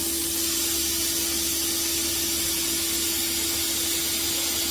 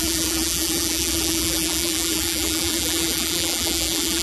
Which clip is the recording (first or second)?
first